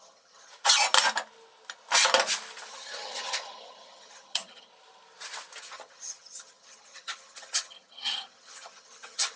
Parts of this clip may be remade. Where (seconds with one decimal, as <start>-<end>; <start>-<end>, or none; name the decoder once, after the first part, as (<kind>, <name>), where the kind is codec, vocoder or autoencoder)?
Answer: 0.0-0.5 (vocoder, HiFi-GAN); 2.7-4.7; 5.6-9.4